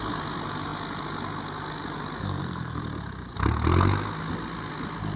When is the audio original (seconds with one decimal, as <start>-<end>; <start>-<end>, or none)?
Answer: 0.0-2.2; 2.8-5.2